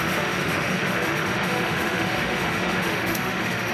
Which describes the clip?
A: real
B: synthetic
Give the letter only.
B